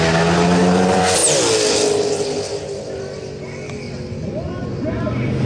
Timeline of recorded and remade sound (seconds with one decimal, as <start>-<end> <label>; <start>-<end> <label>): 0.0-5.5 recorded